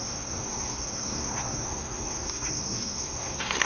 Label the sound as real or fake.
fake